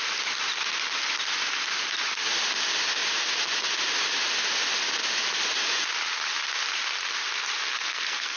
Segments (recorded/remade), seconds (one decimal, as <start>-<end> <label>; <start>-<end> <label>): 0.0-7.7 recorded; 7.7-8.4 remade